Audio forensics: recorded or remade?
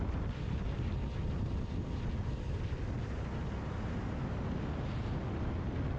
recorded